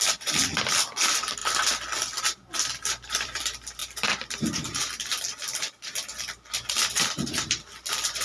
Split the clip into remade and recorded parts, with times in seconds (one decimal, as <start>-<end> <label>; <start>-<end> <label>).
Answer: 0.0-1.4 remade; 1.4-3.1 recorded; 3.1-8.2 remade